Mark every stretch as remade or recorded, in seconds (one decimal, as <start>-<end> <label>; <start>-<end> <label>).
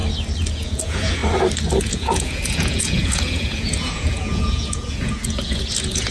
0.0-0.5 recorded; 0.5-1.2 remade; 1.2-1.8 recorded; 1.8-6.1 remade